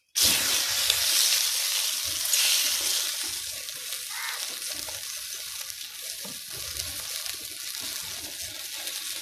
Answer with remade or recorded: recorded